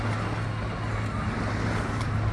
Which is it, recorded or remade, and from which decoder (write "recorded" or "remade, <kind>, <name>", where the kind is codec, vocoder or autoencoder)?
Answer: recorded